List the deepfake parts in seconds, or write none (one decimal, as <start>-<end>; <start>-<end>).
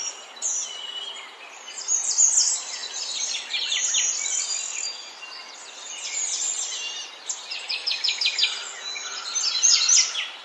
none